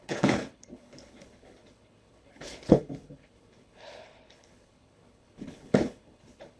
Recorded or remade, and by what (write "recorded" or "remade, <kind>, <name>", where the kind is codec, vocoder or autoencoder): remade, codec, HILCodec